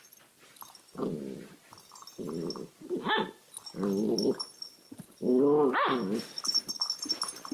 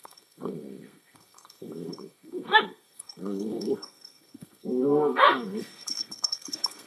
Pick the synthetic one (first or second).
second